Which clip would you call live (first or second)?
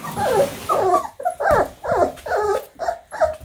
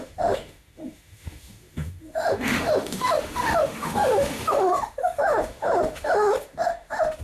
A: first